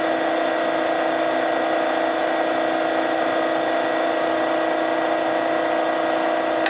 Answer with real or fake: real